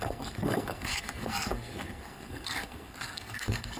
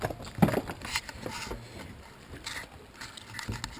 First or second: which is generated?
first